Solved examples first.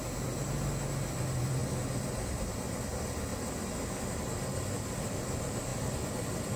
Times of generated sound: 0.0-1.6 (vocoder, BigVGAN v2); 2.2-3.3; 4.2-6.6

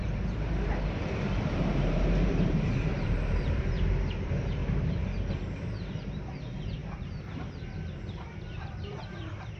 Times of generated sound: 0.0-4.6 (vocoder, BigVGAN v2); 5.3-9.6

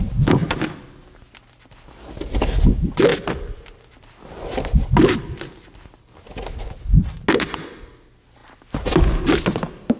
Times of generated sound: none

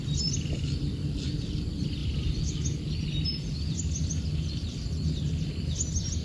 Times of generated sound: none

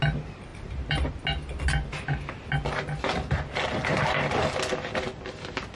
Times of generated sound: 0.5-1.1 (vocoder, BigVGAN v2)

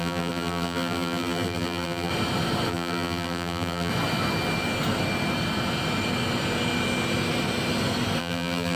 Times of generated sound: 0.0-2.1 (vocoder, BigVGAN v2); 2.7-3.9; 8.2-8.8

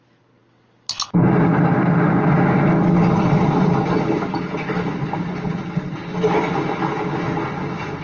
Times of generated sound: none